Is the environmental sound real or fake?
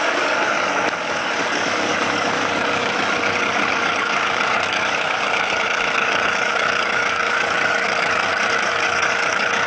fake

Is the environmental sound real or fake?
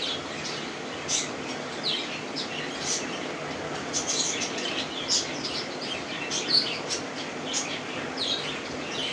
real